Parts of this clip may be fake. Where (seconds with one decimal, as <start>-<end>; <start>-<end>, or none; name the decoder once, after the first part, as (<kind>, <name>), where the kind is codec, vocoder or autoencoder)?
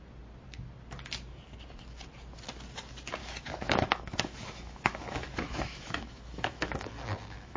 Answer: 3.2-7.6 (autoencoder, DAC-VAE)